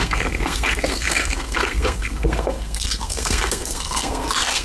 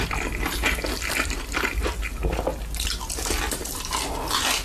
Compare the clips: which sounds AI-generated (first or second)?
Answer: first